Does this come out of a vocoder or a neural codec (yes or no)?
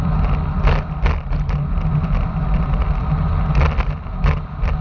no